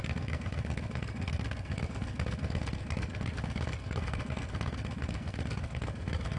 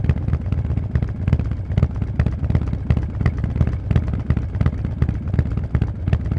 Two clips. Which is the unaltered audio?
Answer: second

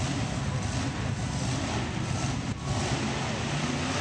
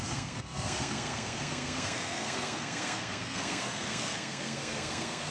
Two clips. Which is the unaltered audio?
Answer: first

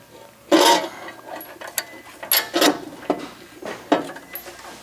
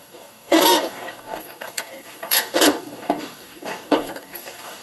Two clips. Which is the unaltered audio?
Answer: first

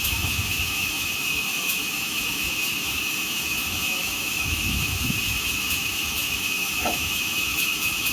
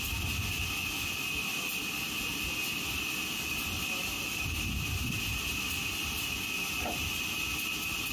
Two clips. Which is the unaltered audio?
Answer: second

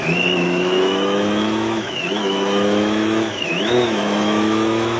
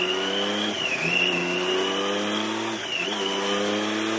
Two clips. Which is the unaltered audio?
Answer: second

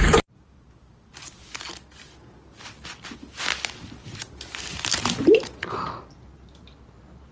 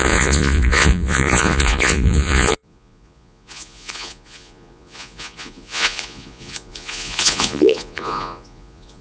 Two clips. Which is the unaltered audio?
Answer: first